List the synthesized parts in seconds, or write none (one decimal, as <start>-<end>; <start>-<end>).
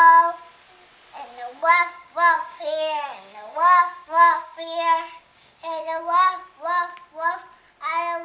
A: 1.6-6.0